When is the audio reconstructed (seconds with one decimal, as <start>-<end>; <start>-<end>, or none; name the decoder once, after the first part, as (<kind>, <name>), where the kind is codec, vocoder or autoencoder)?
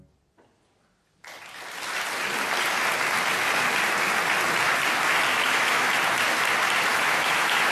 5.3-5.9 (autoencoder, DAC-VAE); 6.9-7.7